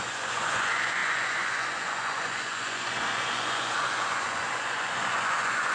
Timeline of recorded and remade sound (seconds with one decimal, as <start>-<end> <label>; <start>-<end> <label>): 0.0-5.7 remade